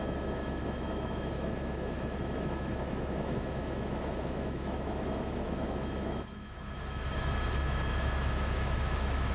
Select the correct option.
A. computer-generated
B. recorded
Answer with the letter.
A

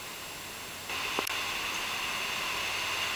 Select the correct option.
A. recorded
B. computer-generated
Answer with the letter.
A